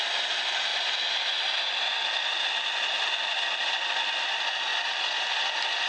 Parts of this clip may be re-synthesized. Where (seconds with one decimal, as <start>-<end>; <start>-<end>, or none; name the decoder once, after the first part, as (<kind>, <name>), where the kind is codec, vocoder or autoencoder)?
none